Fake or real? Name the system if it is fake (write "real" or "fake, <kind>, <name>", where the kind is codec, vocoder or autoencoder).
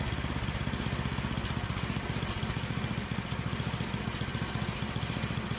real